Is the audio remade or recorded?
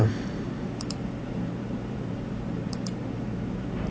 remade